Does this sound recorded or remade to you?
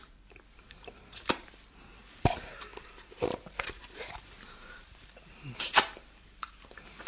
remade